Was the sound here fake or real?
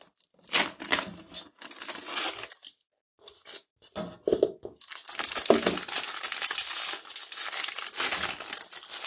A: real